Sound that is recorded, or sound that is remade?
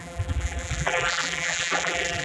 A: remade